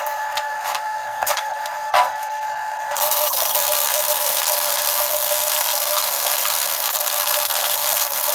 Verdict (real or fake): fake